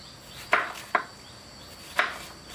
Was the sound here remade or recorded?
recorded